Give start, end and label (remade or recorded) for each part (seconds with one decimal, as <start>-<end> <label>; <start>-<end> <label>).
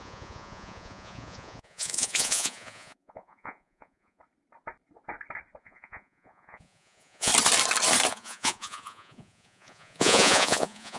0.0-4.2 remade; 4.2-5.6 recorded; 5.6-7.3 remade; 7.3-8.1 recorded; 8.1-11.0 remade